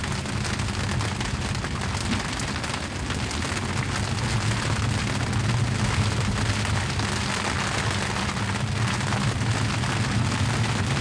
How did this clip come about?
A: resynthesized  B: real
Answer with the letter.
B